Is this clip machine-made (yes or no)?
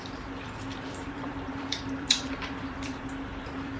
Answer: yes